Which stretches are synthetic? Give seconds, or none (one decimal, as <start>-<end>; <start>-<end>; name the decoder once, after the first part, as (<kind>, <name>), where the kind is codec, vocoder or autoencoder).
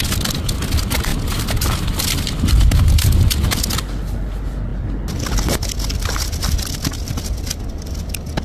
1.1-3.8 (vocoder, BigVGAN v2)